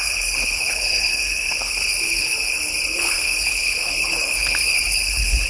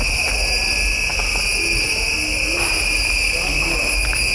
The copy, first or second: first